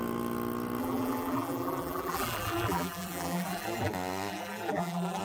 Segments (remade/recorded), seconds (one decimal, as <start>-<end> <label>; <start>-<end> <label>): 0.0-0.8 recorded; 0.8-3.9 remade; 3.9-4.3 recorded; 4.3-5.2 remade